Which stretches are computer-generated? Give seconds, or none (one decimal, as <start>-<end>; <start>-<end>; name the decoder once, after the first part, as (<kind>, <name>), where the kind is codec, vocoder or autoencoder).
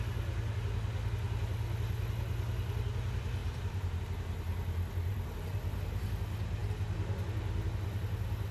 3.4-4.0 (vocoder, BigVGAN v2); 5.1-6.0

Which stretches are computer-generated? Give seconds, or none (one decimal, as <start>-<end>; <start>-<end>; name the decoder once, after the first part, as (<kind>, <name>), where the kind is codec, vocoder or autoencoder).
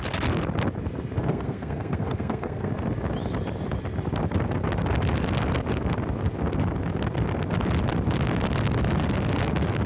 1.3-2.7 (codec, SNAC)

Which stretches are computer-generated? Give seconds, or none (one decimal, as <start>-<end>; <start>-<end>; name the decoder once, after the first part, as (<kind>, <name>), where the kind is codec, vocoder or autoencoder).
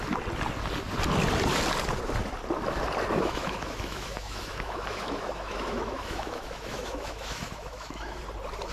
3.1-8.2 (autoencoder, DAC-VAE)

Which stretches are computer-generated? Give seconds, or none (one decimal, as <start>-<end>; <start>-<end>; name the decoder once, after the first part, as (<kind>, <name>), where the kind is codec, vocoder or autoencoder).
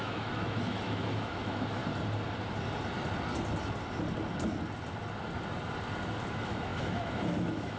0.0-1.8 (autoencoder, DAC-VAE); 6.3-7.8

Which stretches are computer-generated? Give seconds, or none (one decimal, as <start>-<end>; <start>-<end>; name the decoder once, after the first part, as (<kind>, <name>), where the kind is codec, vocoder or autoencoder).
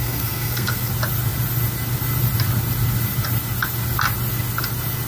0.0-0.9 (codec, SNAC)